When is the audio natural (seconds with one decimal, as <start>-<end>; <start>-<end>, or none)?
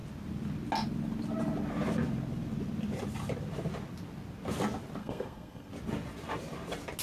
0.0-5.0; 5.7-7.0